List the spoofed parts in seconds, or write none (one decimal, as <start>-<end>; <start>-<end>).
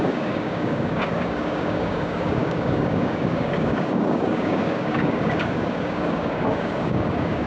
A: 0.0-7.5